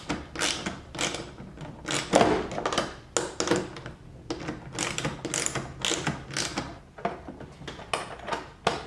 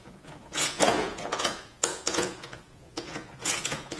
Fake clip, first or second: second